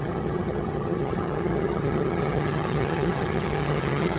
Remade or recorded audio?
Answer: remade